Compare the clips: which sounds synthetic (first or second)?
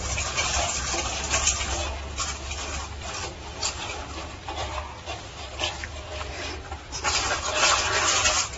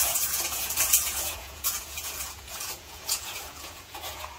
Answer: second